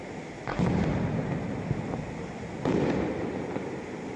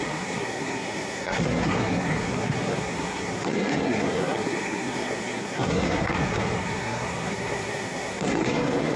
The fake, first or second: second